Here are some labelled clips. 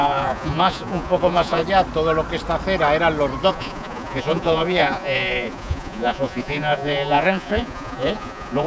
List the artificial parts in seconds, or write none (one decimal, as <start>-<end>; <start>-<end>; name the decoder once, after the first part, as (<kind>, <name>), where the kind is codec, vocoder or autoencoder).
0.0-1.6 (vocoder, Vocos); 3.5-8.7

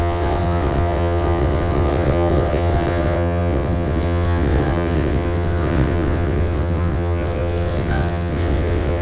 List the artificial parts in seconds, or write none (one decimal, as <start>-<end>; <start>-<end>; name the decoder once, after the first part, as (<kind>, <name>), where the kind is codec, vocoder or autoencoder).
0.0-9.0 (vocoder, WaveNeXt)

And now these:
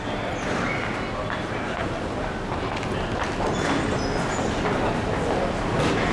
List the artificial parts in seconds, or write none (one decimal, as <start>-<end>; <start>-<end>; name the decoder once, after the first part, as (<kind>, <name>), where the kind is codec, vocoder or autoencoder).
none

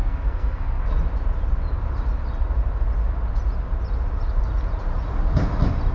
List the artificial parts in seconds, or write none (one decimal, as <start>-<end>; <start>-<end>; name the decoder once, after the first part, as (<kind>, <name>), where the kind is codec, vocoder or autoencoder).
0.0-0.8 (codec, SNAC)

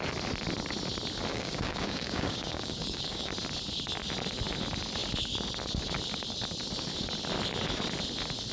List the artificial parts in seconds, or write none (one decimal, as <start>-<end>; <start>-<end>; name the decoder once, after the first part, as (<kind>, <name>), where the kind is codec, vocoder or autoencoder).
1.3-3.3 (codec, DAC)